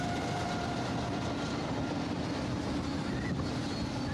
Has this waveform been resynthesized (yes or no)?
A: no